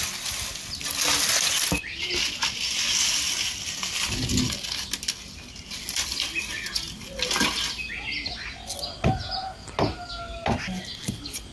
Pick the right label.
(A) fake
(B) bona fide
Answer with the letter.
B